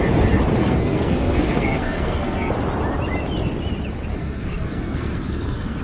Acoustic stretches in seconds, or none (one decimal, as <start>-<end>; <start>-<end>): 0.0-0.6; 2.5-4.1